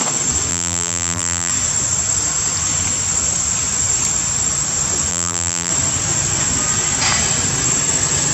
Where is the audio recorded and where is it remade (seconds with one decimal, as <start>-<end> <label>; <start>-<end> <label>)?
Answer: 0.0-0.5 recorded; 0.5-1.5 remade; 1.5-5.1 recorded; 5.1-5.7 remade; 5.7-8.3 recorded

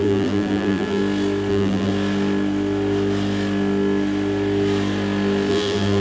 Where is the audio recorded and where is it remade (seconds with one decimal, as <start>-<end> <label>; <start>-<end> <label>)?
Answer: 0.0-1.0 remade; 1.0-1.5 recorded; 1.5-1.9 remade; 1.9-5.5 recorded; 5.5-6.0 remade

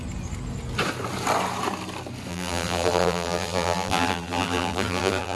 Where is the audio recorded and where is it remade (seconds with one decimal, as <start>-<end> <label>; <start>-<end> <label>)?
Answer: 0.0-2.3 recorded; 2.3-5.4 remade